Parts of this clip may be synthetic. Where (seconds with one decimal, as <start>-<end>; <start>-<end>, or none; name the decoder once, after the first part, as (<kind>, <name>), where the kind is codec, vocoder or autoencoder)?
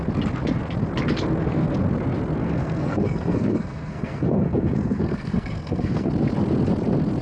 2.4-6.1 (codec, SNAC)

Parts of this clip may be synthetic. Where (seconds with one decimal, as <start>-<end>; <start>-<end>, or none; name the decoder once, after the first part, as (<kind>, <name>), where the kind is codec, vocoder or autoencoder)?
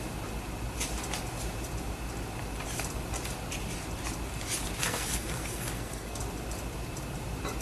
4.8-6.2 (codec, SNAC)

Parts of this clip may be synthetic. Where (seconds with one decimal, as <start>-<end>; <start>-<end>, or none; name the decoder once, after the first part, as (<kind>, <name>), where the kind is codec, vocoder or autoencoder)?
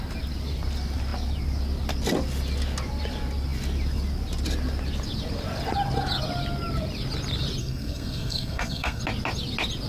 7.6-9.0 (codec, SNAC)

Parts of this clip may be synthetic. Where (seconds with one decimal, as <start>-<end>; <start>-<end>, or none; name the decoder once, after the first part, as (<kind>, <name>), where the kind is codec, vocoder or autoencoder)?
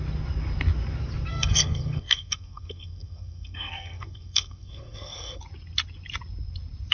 1.3-5.4 (codec, SNAC)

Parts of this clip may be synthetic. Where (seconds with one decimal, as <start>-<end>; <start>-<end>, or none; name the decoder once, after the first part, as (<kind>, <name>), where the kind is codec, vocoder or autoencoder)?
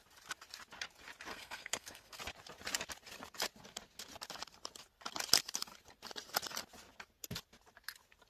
1.3-2.2 (codec, SNAC)